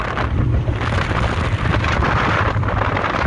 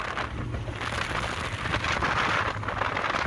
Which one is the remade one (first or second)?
first